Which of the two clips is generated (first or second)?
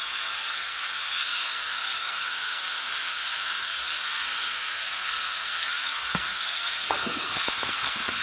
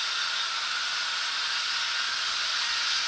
first